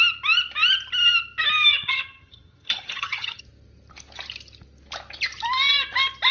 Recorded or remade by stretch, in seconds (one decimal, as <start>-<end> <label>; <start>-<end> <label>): 0.0-1.7 recorded; 1.7-3.4 remade; 3.4-6.3 recorded